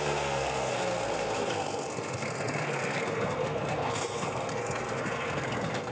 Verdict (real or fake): fake